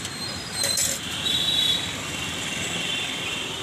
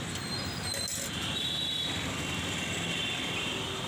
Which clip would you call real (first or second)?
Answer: second